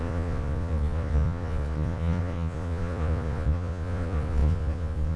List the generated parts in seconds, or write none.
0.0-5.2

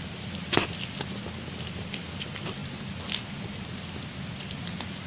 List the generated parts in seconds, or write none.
none

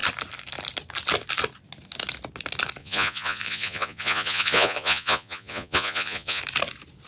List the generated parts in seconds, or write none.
2.8-6.4

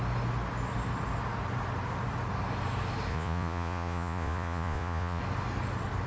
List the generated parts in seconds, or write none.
3.1-5.2

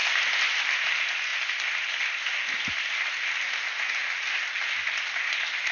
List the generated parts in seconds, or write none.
none

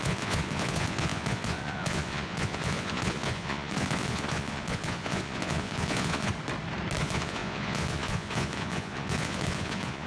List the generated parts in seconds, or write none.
0.0-6.3; 7.0-10.1